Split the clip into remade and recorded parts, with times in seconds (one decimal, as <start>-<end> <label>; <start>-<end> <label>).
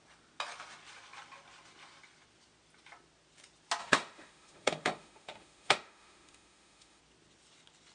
0.0-3.8 recorded; 3.8-7.0 remade; 7.0-7.9 recorded